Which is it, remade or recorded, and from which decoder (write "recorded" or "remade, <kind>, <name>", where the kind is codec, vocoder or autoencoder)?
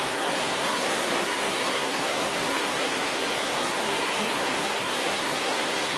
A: remade, codec, SNAC